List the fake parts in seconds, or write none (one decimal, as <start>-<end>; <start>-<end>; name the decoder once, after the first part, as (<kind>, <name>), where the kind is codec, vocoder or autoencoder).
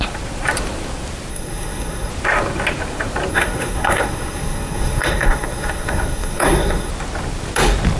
1.3-2.1 (codec, SNAC); 3.3-6.9